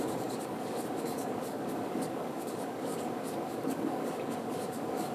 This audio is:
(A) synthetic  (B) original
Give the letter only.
A